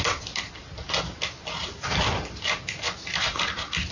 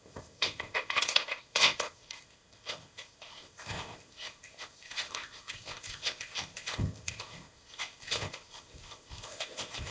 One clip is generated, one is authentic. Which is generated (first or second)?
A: second